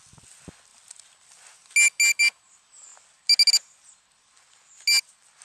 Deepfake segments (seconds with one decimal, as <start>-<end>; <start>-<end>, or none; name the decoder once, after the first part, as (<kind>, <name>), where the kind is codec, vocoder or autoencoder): none

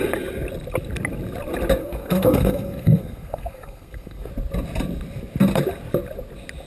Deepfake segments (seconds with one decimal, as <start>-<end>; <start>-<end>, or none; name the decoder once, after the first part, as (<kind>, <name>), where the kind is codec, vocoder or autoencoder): 1.8-4.3 (codec, SNAC)

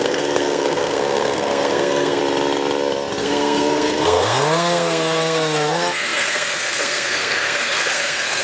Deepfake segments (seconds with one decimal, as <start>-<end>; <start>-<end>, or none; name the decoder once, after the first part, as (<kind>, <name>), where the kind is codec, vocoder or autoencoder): 0.0-2.2 (codec, SNAC); 3.2-8.4

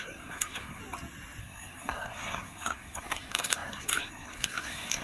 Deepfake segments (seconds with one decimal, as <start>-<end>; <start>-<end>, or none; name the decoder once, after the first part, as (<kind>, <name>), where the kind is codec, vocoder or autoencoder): 0.0-0.8 (codec, SNAC); 1.4-5.0

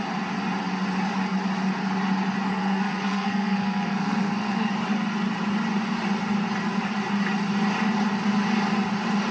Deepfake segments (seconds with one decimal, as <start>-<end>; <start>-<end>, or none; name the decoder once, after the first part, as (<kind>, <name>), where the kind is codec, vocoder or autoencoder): 2.5-4.7 (codec, SNAC)